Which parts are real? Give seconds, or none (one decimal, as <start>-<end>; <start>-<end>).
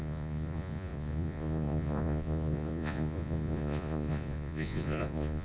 none